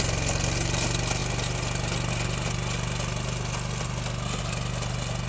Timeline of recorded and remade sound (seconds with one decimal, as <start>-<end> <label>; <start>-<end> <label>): 0.0-5.3 recorded